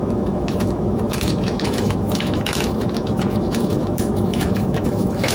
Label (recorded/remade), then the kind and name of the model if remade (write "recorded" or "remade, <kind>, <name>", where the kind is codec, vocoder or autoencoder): remade, autoencoder, DAC-VAE